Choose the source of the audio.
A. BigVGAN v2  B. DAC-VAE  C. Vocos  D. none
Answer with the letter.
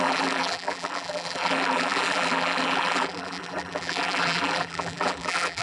A